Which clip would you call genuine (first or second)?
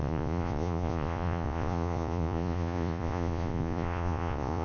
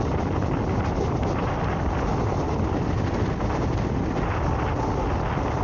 second